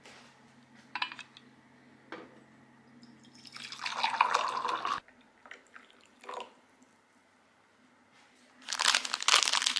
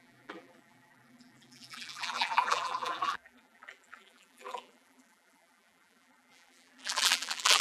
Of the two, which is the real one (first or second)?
first